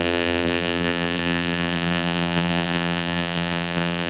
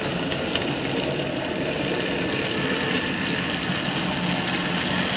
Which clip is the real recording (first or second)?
second